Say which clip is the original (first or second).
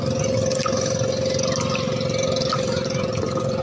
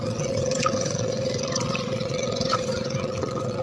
first